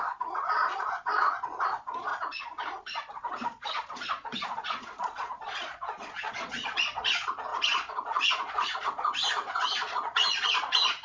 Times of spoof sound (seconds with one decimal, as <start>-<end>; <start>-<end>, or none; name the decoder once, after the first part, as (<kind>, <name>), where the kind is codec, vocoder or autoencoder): 0.0-11.0 (vocoder, Vocos)